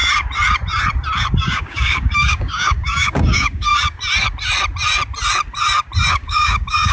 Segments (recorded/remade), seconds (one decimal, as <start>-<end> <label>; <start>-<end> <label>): 0.0-1.3 recorded; 1.3-3.7 remade; 3.7-6.1 recorded; 6.1-6.9 remade